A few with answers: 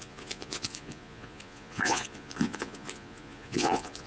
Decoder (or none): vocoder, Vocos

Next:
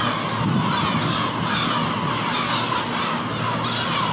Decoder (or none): none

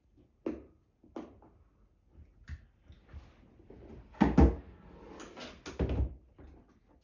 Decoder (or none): none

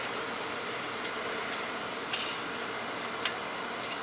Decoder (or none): none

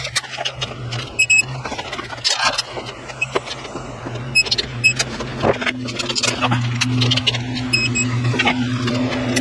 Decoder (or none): none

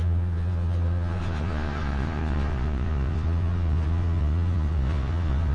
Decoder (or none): vocoder, Vocos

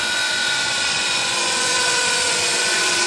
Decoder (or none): vocoder, Vocos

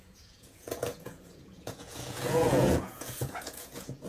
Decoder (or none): vocoder, Vocos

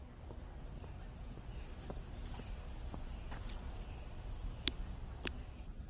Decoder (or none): none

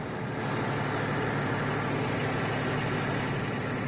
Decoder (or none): none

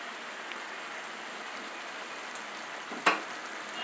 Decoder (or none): none